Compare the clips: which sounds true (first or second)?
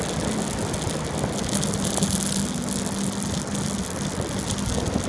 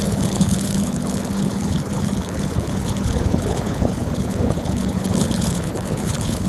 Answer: first